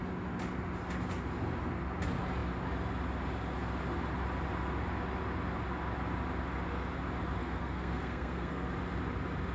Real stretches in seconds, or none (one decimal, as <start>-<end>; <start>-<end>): 0.0-7.4; 8.7-9.5